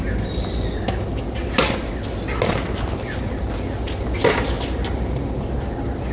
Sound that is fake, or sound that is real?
real